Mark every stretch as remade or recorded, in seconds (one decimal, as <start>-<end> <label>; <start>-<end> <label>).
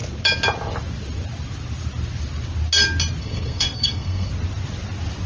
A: 0.0-3.2 recorded; 3.2-4.3 remade; 4.3-5.3 recorded